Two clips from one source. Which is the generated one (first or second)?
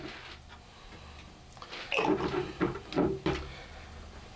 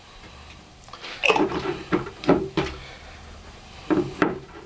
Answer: second